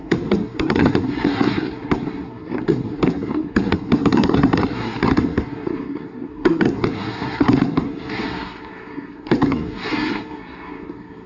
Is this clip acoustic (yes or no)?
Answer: no